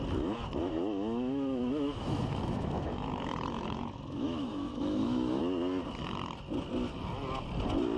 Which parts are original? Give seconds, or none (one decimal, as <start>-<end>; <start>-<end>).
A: 0.0-0.6; 5.4-8.0